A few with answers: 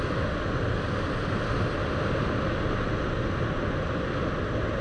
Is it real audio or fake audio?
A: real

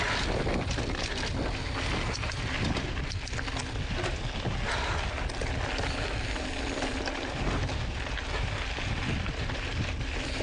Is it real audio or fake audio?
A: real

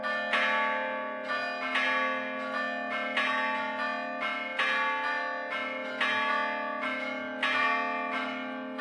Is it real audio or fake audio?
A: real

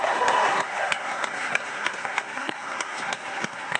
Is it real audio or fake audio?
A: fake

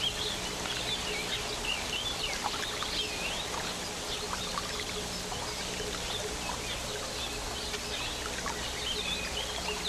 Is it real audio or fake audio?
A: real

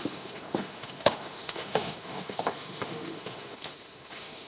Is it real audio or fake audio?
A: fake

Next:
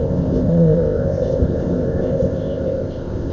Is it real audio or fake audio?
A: fake